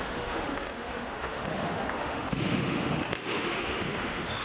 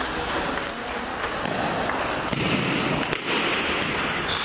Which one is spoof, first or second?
first